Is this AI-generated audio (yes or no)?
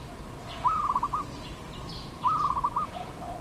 no